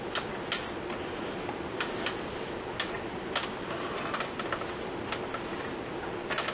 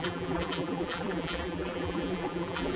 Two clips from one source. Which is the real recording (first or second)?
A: first